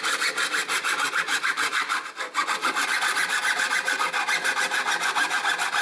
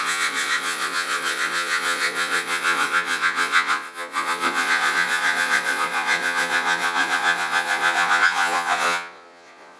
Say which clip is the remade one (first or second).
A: second